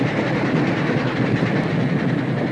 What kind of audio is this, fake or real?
real